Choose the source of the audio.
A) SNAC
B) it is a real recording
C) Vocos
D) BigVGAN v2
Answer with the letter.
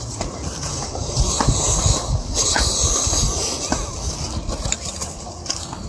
B